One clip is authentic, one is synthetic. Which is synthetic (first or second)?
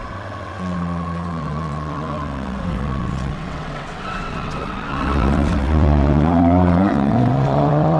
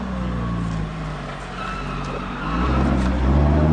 first